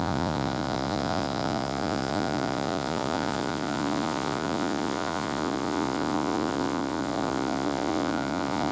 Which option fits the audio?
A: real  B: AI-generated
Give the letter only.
B